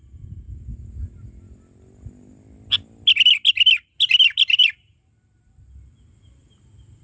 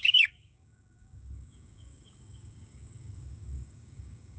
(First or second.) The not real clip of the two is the second